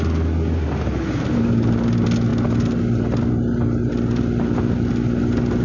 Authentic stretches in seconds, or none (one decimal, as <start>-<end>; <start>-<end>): 0.0-5.6